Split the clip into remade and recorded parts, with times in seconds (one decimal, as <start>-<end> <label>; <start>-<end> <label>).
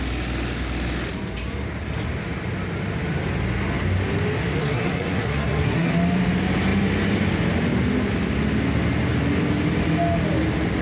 0.0-4.6 recorded; 4.6-5.9 remade; 5.9-10.8 recorded